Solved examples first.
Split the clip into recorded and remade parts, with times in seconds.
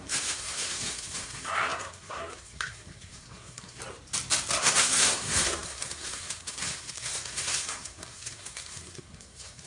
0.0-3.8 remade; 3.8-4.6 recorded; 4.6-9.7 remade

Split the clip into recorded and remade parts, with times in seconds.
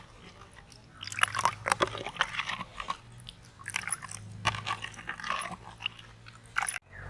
0.0-7.1 recorded